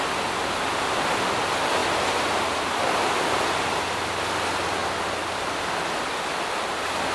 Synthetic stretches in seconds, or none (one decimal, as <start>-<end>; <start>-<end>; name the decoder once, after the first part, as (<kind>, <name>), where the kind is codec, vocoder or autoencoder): none